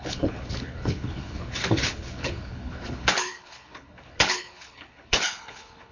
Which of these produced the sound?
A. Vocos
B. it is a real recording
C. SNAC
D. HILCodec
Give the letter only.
D